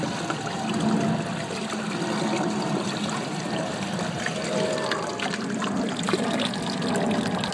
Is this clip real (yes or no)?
yes